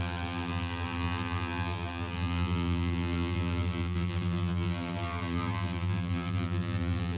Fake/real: fake